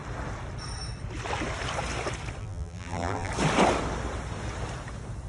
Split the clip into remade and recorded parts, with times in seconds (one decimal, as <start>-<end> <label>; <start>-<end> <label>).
0.0-2.4 recorded; 2.4-3.3 remade; 3.3-5.3 recorded